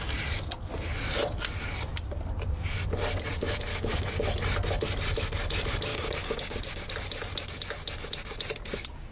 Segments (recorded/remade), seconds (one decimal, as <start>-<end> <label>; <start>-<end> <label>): 0.0-3.7 recorded; 3.7-4.2 remade; 4.2-5.9 recorded; 5.9-6.9 remade; 6.9-9.1 recorded